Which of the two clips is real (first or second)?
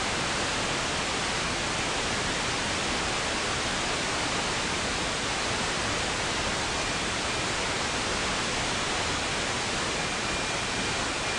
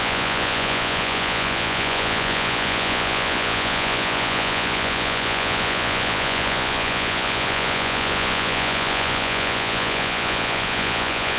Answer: first